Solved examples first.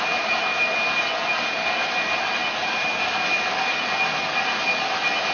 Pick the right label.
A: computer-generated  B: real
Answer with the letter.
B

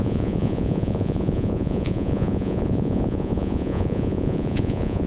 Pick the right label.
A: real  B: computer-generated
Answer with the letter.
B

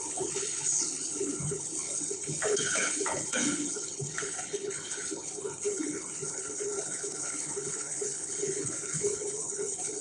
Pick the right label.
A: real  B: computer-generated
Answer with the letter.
B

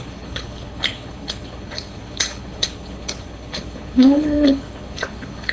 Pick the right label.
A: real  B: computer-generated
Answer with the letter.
B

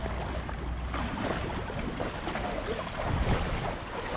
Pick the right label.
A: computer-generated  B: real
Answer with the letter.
B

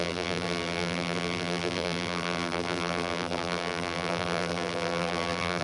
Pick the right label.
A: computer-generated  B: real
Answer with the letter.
A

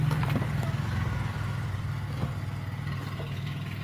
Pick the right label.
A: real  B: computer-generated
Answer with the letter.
A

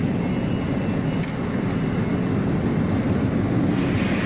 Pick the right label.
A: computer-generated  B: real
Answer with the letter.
B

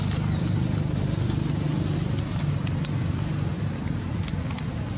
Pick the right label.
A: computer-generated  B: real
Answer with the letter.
B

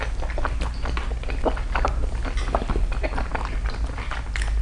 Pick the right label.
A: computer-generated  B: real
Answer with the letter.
B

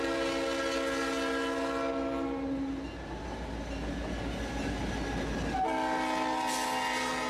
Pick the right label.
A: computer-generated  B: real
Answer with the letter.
B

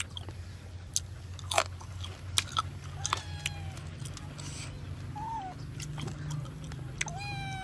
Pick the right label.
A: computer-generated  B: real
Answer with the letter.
B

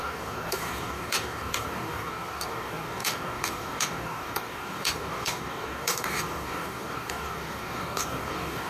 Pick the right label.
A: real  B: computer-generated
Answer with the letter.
B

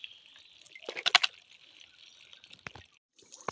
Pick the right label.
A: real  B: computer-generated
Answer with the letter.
A